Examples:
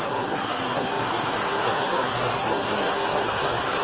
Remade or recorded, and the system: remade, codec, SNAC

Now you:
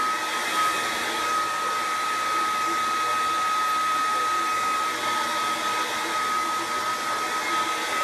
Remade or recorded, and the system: recorded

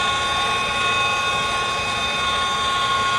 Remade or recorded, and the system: recorded